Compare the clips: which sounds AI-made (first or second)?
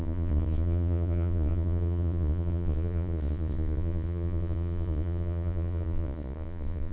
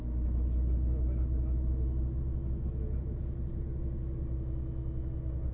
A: first